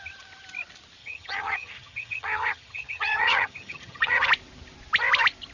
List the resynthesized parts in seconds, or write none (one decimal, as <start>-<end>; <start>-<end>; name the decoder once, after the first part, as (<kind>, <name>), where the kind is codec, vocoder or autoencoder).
1.0-4.3 (vocoder, HiFi-GAN)